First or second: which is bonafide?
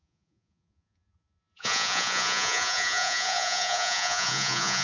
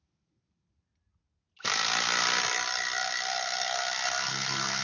second